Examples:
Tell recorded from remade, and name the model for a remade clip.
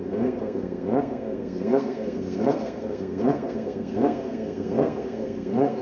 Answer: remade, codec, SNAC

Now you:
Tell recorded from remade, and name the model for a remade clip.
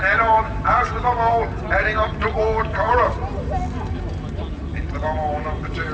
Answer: recorded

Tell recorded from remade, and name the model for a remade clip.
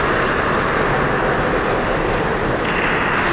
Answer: recorded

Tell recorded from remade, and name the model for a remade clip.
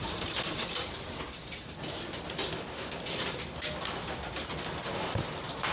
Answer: recorded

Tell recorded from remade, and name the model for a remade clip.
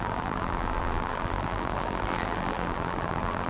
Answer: remade, vocoder, BigVGAN v2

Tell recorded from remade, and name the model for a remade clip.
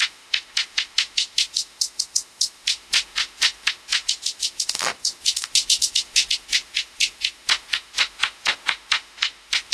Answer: remade, autoencoder, DAC-VAE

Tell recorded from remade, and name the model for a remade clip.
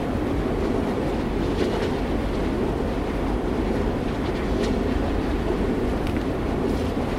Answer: recorded